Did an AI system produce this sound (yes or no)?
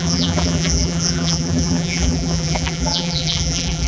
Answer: yes